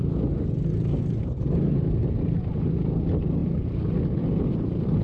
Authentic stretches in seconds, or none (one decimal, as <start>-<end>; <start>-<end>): 0.0-5.0